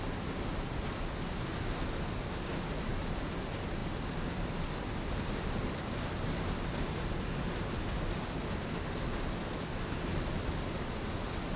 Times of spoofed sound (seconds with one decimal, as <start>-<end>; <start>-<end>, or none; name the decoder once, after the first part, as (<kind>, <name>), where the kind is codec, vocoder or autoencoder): none